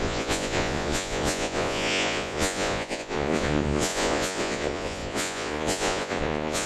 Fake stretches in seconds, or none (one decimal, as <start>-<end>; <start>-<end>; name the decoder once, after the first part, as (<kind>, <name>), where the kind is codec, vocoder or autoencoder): 0.0-6.7 (vocoder, Vocos)